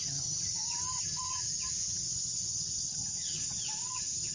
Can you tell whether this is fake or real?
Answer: fake